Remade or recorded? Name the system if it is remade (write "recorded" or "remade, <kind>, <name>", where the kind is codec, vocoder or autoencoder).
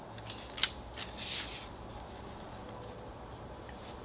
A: recorded